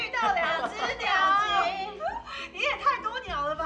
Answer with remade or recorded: recorded